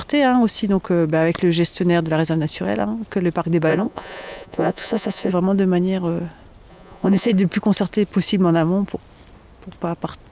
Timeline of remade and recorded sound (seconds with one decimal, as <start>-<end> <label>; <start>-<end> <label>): 0.0-3.7 recorded; 3.7-5.3 remade; 5.3-6.7 recorded; 6.7-7.3 remade; 7.3-10.3 recorded